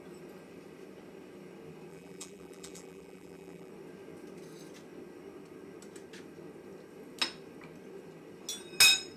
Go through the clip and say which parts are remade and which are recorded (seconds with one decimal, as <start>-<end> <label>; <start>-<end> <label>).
0.0-1.9 recorded; 1.9-3.7 remade; 3.7-9.2 recorded